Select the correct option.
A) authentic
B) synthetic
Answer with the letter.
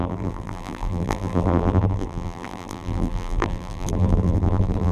B